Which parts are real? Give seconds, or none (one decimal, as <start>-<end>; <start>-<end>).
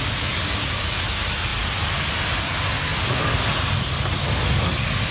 0.0-2.9; 3.5-5.1